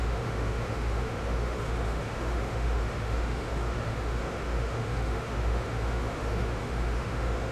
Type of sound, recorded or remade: remade